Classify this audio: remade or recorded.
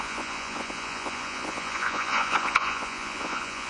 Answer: remade